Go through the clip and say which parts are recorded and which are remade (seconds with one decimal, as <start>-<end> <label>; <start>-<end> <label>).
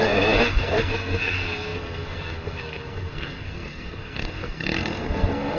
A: 0.0-5.6 remade